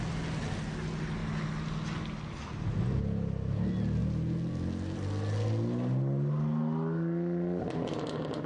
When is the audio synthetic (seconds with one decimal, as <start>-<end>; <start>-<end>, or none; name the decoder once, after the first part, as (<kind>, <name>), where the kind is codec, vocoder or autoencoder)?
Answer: none